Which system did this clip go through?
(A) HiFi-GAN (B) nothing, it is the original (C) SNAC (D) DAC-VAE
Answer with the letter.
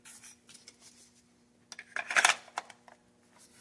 B